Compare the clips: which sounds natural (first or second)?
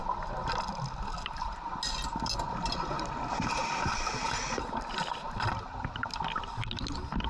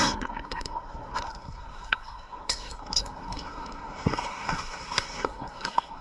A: first